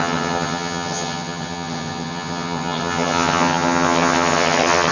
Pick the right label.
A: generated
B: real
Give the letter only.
A